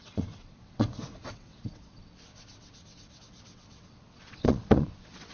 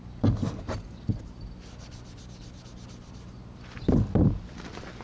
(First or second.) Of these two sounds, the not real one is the first